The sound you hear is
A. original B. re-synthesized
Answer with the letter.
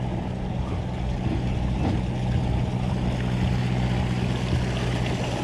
A